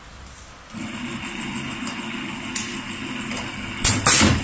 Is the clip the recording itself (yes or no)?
yes